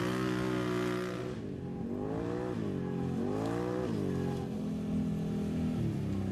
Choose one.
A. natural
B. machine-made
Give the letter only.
A